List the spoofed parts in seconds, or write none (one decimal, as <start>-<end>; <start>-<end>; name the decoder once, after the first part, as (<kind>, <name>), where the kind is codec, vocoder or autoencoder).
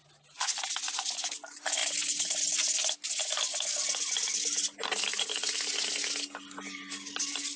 none